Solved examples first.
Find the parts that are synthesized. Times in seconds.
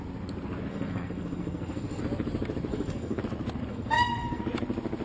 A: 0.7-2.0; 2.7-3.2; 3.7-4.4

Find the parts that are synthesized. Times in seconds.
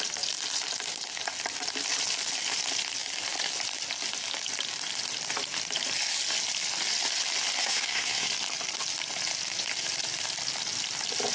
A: 7.6-8.3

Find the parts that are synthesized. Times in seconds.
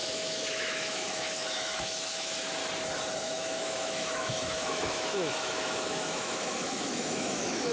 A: 0.0-2.6; 3.2-7.7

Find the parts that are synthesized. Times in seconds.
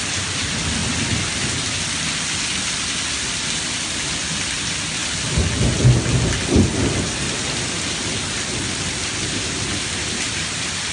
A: none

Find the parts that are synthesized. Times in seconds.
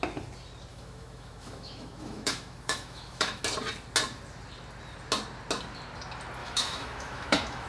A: 0.7-3.4; 6.4-7.7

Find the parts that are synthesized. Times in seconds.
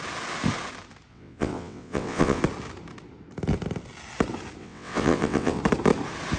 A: 1.1-2.4; 4.6-5.6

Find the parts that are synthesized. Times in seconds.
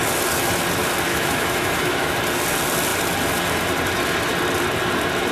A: 1.1-2.2